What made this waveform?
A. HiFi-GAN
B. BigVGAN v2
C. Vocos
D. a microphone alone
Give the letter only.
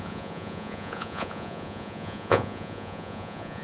C